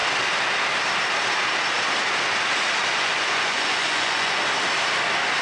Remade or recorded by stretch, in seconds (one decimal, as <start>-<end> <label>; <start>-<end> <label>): 0.0-2.9 recorded; 2.9-4.4 remade; 4.4-5.4 recorded